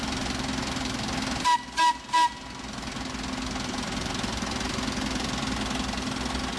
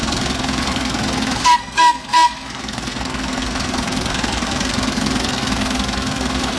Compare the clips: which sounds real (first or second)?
first